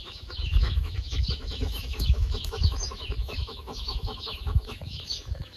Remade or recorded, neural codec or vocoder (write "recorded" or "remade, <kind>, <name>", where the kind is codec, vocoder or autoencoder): remade, autoencoder, DAC-VAE